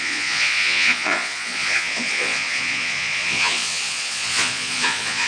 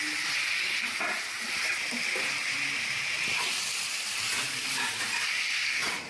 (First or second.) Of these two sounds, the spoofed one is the first